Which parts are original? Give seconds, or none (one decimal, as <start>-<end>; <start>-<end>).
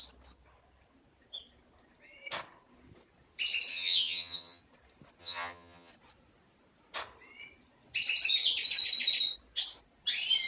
0.0-3.7; 4.6-5.2; 5.9-10.5